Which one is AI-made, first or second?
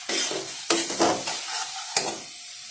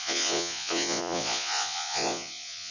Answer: second